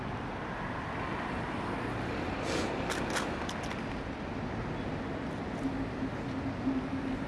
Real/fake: real